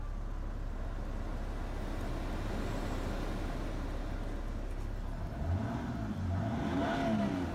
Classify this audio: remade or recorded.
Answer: recorded